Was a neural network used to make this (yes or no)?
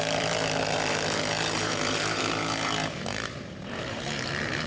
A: yes